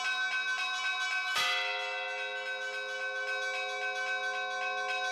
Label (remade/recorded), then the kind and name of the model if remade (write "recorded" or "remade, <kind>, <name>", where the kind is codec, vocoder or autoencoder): recorded